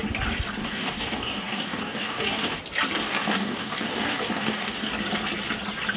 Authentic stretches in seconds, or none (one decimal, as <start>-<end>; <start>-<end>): 0.0-0.6; 2.6-3.0; 4.9-6.0